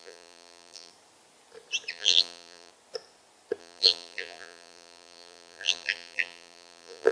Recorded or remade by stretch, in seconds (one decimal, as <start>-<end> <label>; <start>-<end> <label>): 0.0-0.9 remade; 0.9-1.9 recorded; 1.9-2.7 remade; 2.7-3.6 recorded; 3.6-7.1 remade